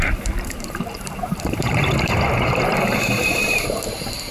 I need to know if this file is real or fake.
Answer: fake